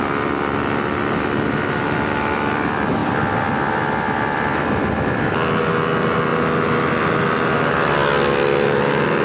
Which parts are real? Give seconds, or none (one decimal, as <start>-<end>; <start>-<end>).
0.0-9.2